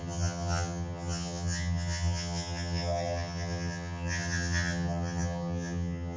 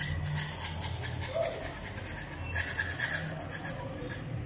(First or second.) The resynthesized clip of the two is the first